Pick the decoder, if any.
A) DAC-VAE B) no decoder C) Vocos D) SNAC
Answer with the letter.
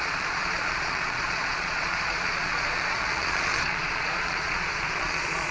C